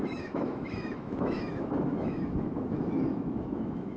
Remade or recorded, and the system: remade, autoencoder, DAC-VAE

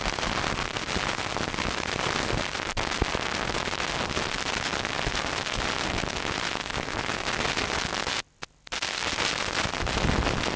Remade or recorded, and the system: recorded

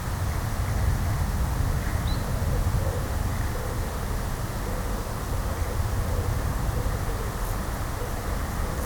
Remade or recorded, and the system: recorded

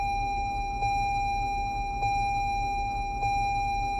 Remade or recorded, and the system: remade, autoencoder, DAC-VAE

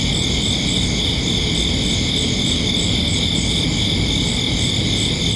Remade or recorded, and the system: recorded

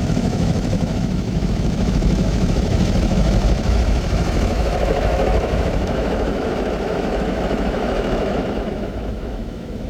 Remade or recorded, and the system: remade, autoencoder, DAC-VAE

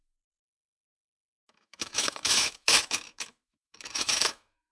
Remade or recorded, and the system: remade, autoencoder, DAC-VAE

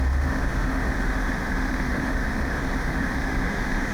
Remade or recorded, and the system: remade, autoencoder, DAC-VAE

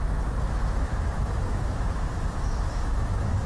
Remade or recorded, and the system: remade, autoencoder, DAC-VAE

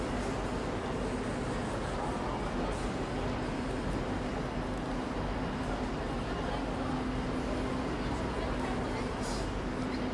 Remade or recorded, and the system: recorded